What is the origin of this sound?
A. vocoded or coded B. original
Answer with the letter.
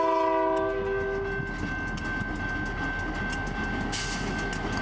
B